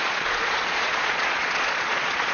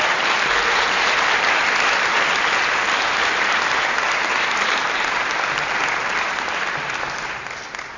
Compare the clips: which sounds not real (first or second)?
first